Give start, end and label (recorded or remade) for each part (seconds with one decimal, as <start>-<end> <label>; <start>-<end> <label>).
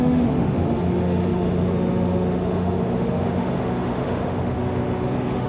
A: 0.0-5.5 remade